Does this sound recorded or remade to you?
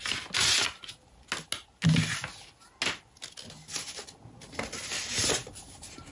recorded